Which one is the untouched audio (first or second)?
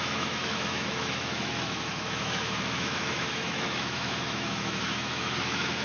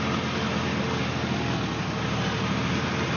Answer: second